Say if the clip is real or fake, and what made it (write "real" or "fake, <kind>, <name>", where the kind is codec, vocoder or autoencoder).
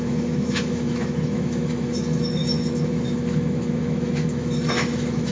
fake, autoencoder, DAC-VAE